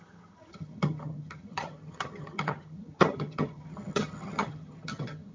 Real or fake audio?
fake